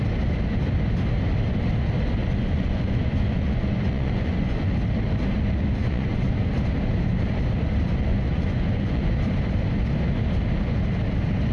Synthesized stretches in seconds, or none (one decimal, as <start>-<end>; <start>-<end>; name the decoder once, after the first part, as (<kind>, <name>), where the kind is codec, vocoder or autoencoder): 2.2-4.7 (vocoder, Vocos); 5.8-6.5; 8.1-9.1